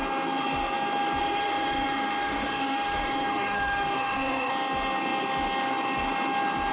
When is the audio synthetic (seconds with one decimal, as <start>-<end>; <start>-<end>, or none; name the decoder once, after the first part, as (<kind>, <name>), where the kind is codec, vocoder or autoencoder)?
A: 1.2-4.5 (autoencoder, DAC-VAE)